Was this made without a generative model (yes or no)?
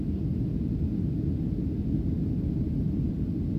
yes